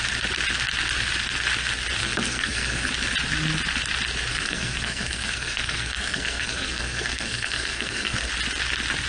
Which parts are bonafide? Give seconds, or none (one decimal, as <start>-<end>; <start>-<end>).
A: 0.0-2.0; 2.9-4.3; 8.3-9.1